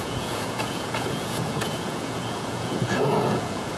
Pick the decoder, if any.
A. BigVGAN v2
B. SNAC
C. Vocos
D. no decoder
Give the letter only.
C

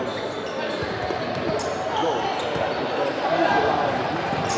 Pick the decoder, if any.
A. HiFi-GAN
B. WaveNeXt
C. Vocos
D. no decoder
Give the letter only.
D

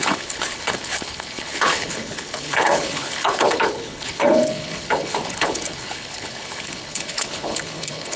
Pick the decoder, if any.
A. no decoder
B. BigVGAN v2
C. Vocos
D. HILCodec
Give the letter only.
D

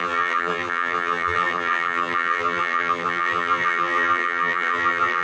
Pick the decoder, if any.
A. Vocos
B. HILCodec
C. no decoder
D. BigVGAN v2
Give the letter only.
D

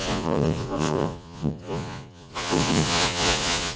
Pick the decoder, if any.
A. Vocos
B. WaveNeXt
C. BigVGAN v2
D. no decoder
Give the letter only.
A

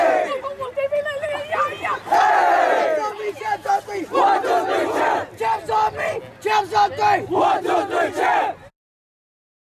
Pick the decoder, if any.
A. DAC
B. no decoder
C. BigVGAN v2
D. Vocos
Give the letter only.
B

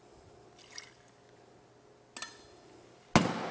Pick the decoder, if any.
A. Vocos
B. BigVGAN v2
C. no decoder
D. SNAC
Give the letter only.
C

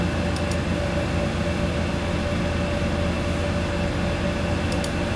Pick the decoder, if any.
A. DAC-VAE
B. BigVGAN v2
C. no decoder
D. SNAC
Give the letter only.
C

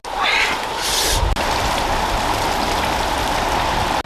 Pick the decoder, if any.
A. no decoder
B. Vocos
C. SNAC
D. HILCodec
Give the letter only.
A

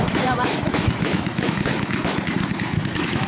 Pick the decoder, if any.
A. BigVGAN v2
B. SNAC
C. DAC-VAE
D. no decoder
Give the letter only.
C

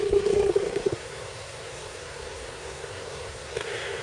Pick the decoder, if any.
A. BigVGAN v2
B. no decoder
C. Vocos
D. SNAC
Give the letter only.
D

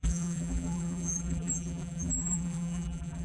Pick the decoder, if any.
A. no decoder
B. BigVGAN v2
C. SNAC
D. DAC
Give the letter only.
B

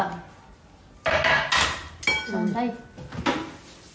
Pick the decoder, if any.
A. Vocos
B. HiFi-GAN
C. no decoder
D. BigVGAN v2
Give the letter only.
C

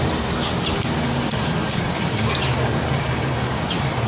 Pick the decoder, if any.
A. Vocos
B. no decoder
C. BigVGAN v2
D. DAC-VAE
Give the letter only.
B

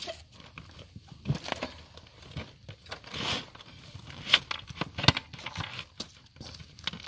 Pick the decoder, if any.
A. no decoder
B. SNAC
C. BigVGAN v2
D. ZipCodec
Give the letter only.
A